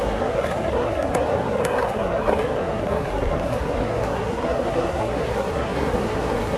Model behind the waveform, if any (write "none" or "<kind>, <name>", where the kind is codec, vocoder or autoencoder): codec, SNAC